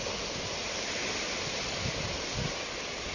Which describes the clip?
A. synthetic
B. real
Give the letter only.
B